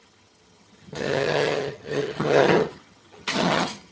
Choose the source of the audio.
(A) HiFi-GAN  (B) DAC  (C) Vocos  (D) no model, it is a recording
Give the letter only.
A